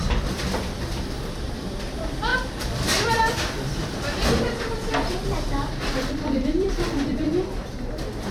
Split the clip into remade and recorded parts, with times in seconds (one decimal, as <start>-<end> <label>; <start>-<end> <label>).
0.0-8.3 remade